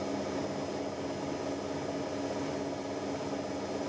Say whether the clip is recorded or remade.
recorded